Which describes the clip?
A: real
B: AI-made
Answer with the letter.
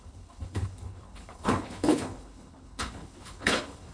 B